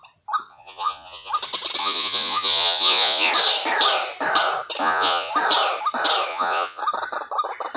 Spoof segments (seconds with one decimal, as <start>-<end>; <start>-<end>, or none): 0.5-1.3; 1.8-3.3; 4.8-5.3; 6.3-6.8